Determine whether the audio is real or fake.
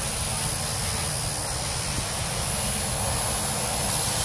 real